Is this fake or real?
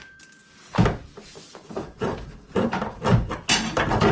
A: real